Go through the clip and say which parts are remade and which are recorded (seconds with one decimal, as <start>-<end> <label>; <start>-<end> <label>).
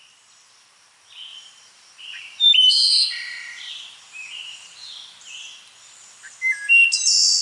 0.0-1.3 recorded; 1.3-5.3 remade; 5.3-7.4 recorded